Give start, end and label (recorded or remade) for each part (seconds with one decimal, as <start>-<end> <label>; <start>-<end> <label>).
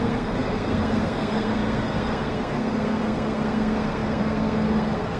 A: 0.0-5.2 remade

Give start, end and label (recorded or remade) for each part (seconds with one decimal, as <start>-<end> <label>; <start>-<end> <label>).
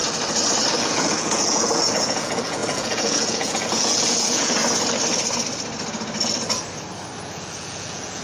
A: 0.0-0.8 recorded; 0.8-4.6 remade; 4.6-7.3 recorded; 7.3-8.2 remade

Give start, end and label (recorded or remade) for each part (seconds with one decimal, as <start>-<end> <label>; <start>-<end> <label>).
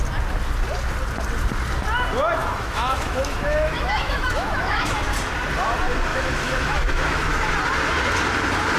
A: 0.0-2.4 recorded; 2.4-4.9 remade; 4.9-6.1 recorded; 6.1-7.5 remade; 7.5-8.8 recorded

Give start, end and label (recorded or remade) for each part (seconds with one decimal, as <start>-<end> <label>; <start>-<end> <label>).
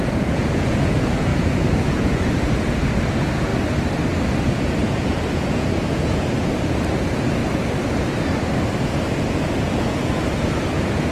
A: 0.0-3.5 remade; 3.5-4.5 recorded; 4.5-7.4 remade; 7.4-9.2 recorded; 9.2-11.1 remade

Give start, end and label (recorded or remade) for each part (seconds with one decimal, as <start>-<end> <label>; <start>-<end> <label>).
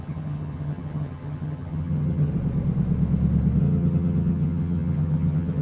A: 0.0-2.3 remade; 2.3-3.6 recorded; 3.6-5.6 remade